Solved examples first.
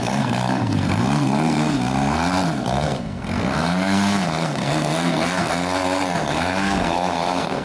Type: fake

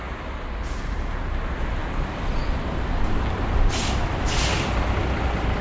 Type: real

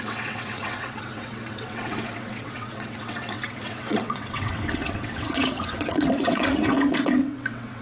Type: fake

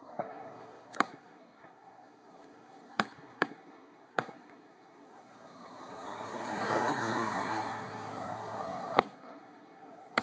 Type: fake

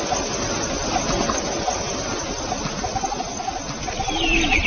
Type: real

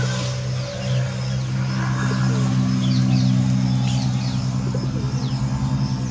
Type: real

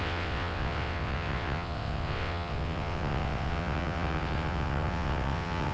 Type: fake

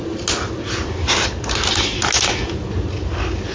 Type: real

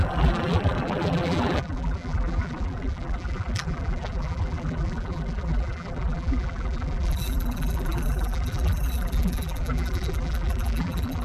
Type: fake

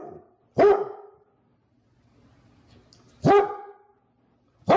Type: real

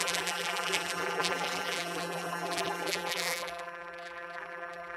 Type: fake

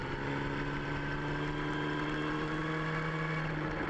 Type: real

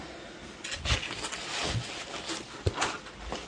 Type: real